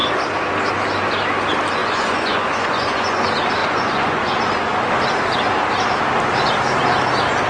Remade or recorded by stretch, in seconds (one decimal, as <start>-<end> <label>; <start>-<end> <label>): 0.0-1.8 recorded; 1.8-3.2 remade; 3.2-3.6 recorded; 3.6-4.3 remade; 4.3-7.5 recorded